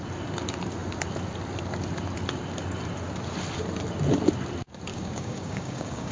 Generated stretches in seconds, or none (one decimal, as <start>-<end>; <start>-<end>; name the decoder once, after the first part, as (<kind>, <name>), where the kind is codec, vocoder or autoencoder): 4.9-6.1 (codec, DAC)